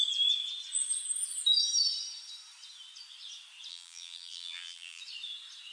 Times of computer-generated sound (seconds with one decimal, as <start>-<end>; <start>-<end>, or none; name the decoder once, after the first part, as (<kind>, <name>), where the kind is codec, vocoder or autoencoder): 3.7-5.0 (vocoder, BigVGAN v2)